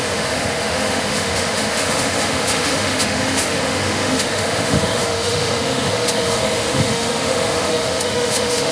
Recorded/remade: remade